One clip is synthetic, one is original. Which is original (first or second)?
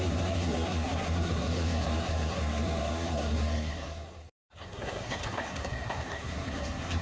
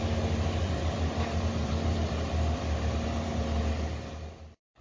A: second